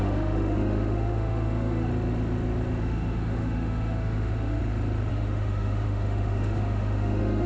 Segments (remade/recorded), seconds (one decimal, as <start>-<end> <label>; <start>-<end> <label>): 0.0-1.9 remade; 1.9-2.8 recorded; 2.8-4.6 remade; 4.6-5.1 recorded; 5.1-7.5 remade